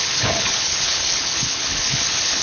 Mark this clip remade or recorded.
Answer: remade